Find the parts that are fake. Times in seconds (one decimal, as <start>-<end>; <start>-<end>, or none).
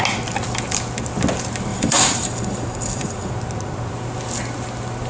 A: 1.7-3.3